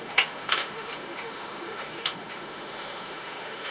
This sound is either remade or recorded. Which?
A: remade